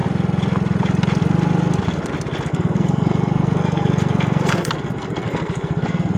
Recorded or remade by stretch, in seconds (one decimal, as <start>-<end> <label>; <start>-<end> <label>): 0.0-2.5 recorded; 2.5-6.2 remade